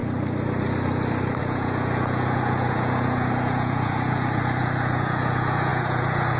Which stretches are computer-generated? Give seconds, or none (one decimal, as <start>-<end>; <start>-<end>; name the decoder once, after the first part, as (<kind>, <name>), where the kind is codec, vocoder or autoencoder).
1.4-6.4 (vocoder, Vocos)